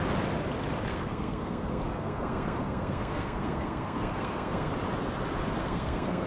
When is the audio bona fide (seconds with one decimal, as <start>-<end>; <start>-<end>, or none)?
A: 0.0-0.9; 4.7-5.6